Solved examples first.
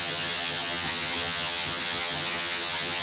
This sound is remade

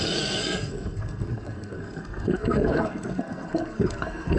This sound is remade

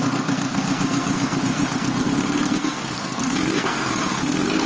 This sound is remade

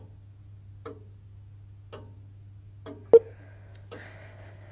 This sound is recorded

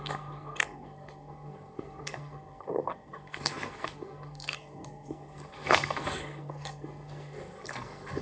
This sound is remade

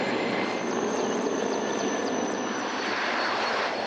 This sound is remade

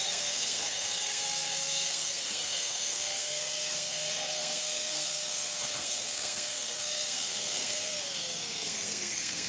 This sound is remade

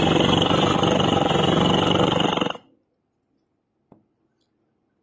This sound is recorded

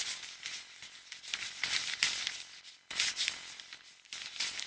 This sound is recorded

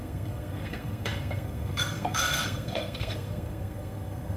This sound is remade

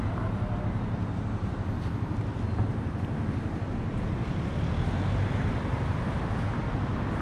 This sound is recorded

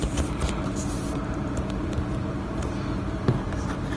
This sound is remade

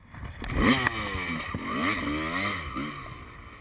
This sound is recorded